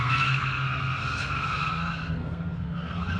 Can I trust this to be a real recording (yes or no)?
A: no